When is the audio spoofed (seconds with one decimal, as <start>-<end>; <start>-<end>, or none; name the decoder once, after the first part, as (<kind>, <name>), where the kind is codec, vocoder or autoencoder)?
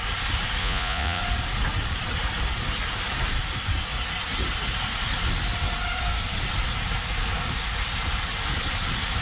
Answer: 0.6-1.2 (vocoder, Vocos)